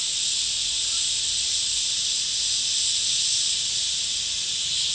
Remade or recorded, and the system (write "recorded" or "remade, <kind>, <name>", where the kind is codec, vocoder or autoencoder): recorded